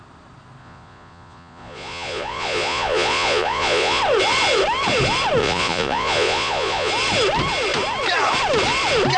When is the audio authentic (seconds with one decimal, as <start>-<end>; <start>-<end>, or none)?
0.0-0.6; 4.0-5.4; 6.9-9.2